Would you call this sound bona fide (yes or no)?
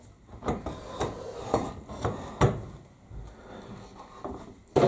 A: yes